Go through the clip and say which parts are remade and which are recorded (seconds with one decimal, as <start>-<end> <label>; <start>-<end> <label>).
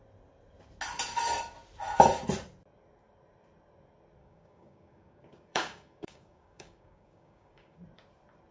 0.0-4.2 recorded; 4.2-7.8 remade; 7.8-8.5 recorded